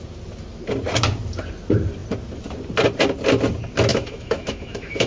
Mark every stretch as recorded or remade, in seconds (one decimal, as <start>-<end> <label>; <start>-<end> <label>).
0.0-3.9 recorded; 3.9-5.1 remade